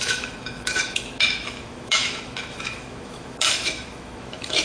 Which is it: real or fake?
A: fake